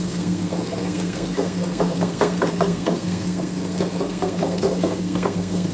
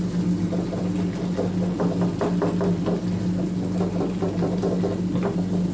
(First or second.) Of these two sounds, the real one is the second